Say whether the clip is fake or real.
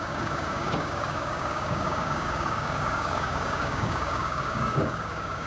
fake